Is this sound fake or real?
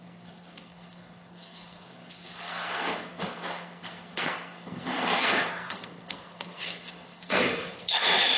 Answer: fake